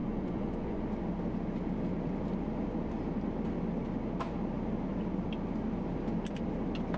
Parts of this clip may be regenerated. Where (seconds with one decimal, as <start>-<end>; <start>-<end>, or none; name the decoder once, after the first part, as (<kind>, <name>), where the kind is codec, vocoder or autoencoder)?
0.0-0.8 (vocoder, Vocos)